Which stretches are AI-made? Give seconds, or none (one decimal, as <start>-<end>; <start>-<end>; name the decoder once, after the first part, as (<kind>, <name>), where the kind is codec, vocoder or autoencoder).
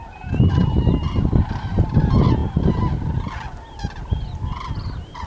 none